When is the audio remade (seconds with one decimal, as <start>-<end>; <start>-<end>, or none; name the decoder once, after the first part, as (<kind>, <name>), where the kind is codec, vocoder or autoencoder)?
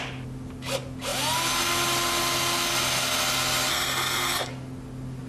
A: 3.7-4.5 (codec, SNAC)